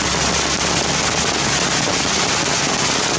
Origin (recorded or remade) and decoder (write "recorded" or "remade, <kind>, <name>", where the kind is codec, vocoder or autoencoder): recorded